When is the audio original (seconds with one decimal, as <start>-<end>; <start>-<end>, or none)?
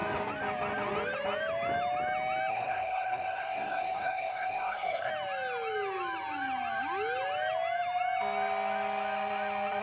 0.0-2.5; 5.1-9.8